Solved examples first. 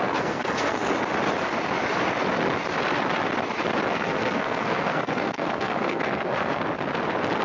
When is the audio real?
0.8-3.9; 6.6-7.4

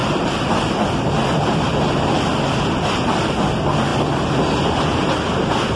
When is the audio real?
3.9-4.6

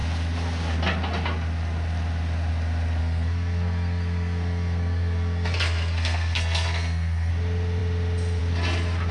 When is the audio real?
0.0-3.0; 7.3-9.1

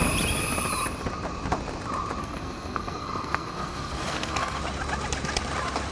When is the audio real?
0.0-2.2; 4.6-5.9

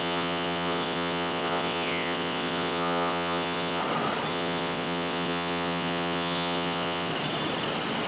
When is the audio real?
3.8-4.3; 7.1-8.1